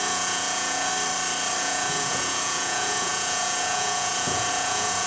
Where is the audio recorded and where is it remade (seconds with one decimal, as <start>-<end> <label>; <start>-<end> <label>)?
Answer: 0.0-0.9 remade; 0.9-1.6 recorded; 1.6-5.1 remade

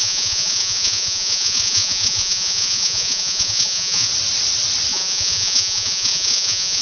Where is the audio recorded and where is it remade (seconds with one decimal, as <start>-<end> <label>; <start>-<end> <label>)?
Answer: 0.0-4.1 remade; 4.1-4.9 recorded; 4.9-6.8 remade

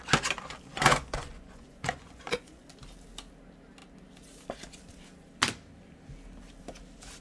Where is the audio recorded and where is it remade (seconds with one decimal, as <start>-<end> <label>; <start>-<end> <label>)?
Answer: 0.0-0.7 recorded; 0.7-2.7 remade; 2.7-7.2 recorded

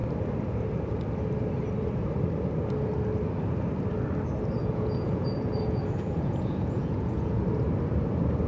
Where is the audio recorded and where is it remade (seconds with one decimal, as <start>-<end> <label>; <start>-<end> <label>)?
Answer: 0.0-4.6 recorded; 4.6-7.4 remade; 7.4-8.5 recorded